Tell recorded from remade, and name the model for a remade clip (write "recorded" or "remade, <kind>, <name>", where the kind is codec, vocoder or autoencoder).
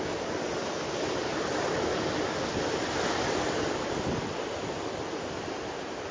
recorded